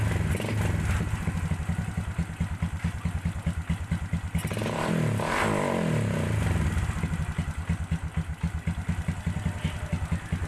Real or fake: real